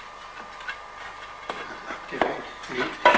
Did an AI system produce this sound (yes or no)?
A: no